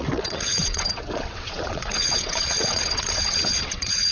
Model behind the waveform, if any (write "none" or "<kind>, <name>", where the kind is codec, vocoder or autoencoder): vocoder, WaveNeXt